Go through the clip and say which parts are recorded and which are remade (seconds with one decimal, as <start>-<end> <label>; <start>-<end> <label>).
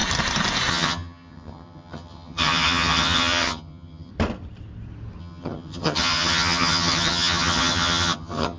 0.0-0.7 recorded; 0.7-4.1 remade; 4.1-5.2 recorded; 5.2-8.6 remade